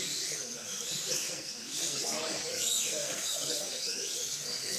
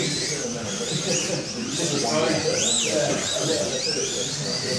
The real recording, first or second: second